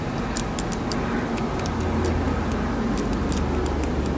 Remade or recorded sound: recorded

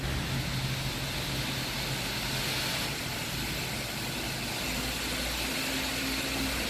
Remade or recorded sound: recorded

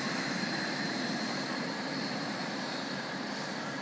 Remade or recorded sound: remade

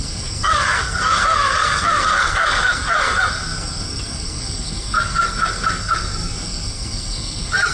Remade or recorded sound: remade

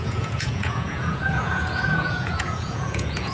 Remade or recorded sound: remade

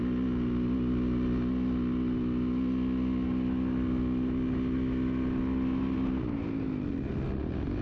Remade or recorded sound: recorded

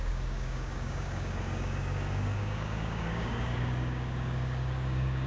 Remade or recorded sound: remade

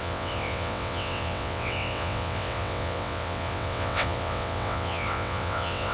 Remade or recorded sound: remade